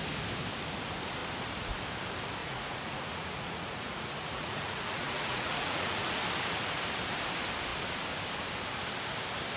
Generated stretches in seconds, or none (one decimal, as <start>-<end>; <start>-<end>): 2.4-6.2